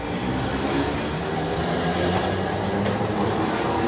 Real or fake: real